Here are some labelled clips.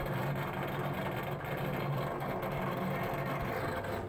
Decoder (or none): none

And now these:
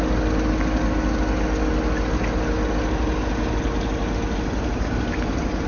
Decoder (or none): none